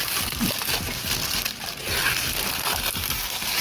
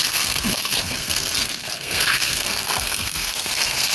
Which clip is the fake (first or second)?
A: second